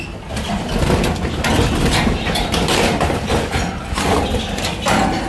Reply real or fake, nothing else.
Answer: real